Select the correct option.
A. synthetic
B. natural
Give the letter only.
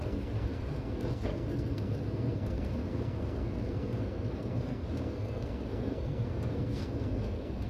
A